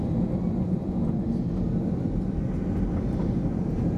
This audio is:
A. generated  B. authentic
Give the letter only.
B